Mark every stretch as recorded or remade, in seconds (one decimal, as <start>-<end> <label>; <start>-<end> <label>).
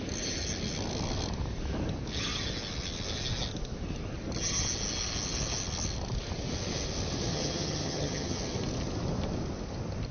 0.0-7.3 recorded; 7.3-8.4 remade; 8.4-10.1 recorded